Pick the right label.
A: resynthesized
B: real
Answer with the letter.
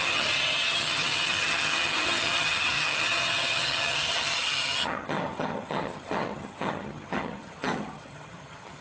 A